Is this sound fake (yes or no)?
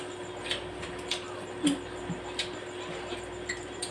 yes